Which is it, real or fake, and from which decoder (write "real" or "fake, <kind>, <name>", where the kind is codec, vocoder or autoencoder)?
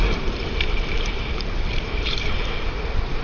fake, vocoder, BigVGAN v2